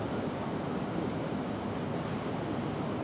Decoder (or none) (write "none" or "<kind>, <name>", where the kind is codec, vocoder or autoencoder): none